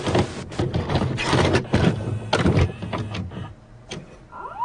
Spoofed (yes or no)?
no